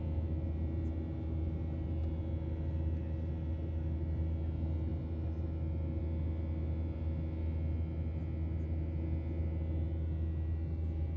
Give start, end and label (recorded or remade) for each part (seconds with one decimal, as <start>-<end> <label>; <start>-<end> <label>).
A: 0.0-11.2 recorded